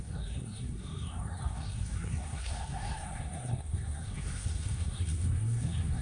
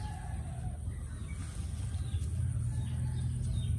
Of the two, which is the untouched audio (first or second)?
second